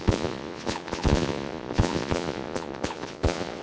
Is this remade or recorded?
remade